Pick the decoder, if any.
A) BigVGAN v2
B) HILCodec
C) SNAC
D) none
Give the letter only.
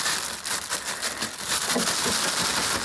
D